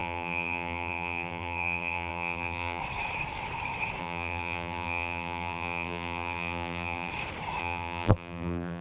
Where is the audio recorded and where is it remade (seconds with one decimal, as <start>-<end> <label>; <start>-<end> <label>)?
0.0-2.8 remade; 2.8-4.0 recorded; 4.0-7.1 remade; 7.1-7.6 recorded; 7.6-8.8 remade